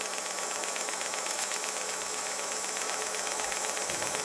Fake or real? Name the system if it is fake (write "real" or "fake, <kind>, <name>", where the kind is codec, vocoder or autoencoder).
fake, autoencoder, DAC-VAE